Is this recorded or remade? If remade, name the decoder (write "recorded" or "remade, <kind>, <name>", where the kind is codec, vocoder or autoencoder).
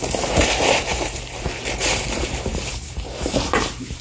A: remade, vocoder, BigVGAN v2